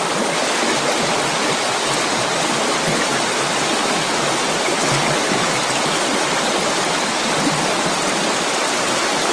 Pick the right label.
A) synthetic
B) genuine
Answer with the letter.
B